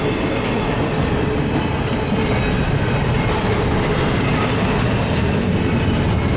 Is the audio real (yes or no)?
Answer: yes